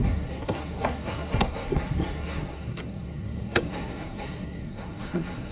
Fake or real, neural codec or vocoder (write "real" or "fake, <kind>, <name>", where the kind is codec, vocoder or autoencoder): fake, codec, SNAC